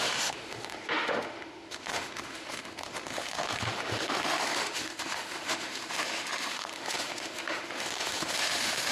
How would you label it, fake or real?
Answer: fake